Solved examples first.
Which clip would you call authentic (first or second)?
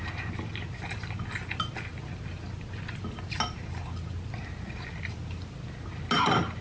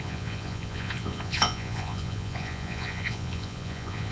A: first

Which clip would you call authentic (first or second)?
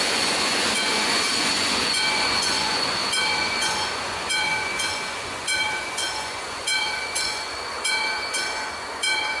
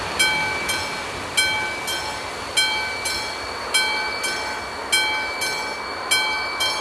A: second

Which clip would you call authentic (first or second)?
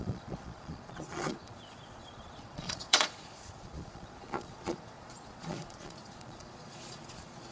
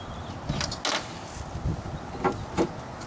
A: second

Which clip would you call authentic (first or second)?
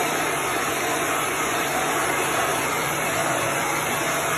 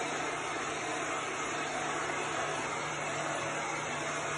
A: second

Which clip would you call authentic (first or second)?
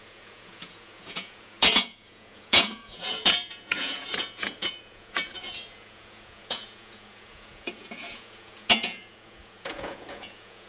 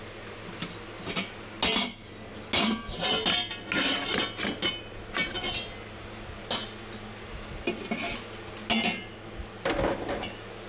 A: second